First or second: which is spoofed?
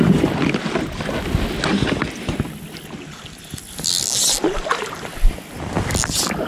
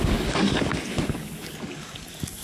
second